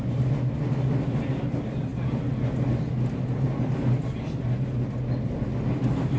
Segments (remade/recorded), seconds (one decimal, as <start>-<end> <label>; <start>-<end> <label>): 0.0-6.2 recorded